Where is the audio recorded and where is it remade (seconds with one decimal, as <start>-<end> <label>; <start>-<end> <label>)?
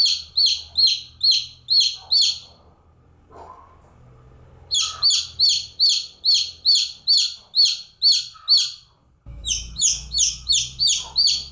0.0-9.3 recorded; 9.3-10.5 remade; 10.5-11.5 recorded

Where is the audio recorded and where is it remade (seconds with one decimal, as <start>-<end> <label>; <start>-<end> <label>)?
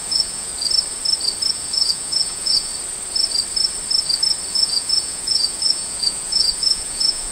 0.0-0.5 remade; 0.5-1.5 recorded; 1.5-2.7 remade; 2.7-4.5 recorded; 4.5-7.3 remade